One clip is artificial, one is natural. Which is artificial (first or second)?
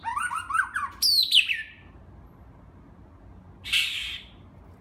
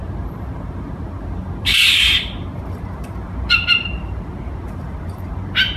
second